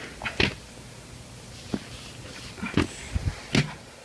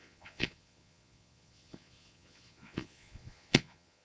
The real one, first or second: first